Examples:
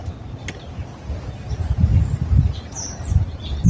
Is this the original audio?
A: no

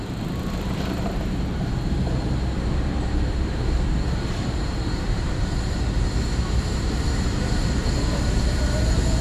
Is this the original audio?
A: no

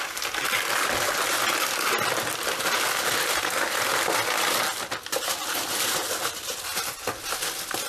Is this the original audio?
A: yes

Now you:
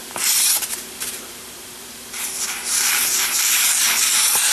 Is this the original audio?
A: no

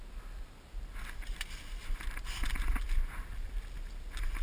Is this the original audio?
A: yes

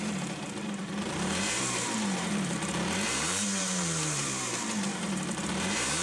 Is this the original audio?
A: no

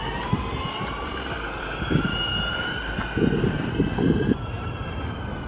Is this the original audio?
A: yes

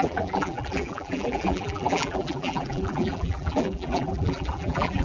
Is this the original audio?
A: no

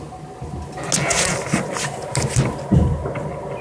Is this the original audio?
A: yes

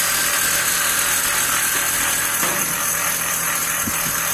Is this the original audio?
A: yes